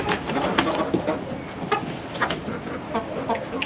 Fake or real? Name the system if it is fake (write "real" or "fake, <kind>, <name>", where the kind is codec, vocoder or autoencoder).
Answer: real